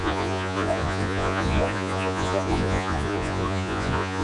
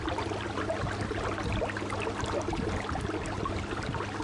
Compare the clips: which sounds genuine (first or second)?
second